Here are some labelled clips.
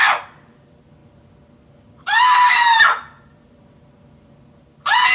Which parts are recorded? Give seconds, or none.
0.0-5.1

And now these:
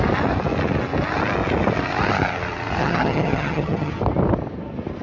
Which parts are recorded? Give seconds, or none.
0.0-2.8; 3.9-5.0

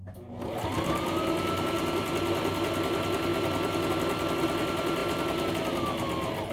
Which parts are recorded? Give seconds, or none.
0.0-6.5

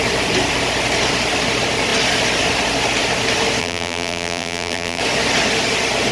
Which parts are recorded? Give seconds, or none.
0.0-3.6; 5.0-6.1

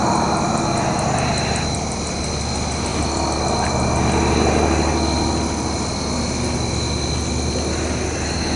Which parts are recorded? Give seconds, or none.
0.0-8.6

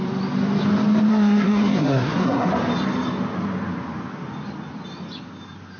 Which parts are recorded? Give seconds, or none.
0.0-1.1; 2.5-5.8